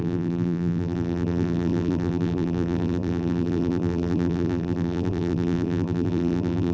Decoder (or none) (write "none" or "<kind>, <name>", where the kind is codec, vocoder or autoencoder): vocoder, BigVGAN v2